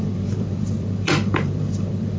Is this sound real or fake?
fake